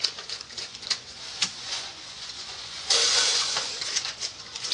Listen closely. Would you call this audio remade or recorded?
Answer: remade